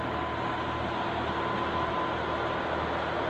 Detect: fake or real real